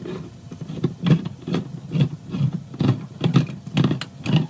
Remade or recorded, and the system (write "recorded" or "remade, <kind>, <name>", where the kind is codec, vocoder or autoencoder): recorded